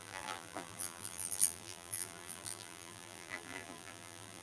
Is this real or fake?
fake